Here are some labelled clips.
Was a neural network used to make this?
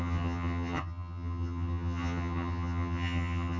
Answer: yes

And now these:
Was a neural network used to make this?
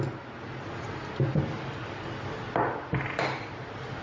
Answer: no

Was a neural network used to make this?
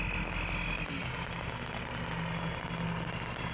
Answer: no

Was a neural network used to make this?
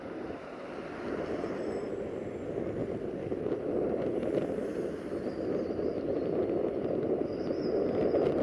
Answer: no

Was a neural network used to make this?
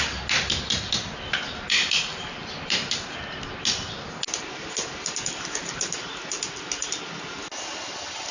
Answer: no